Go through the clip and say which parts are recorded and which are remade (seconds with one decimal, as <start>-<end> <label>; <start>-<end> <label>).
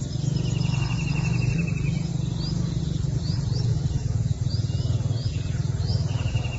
0.0-1.5 recorded; 1.5-2.1 remade; 2.1-2.8 recorded; 2.8-6.6 remade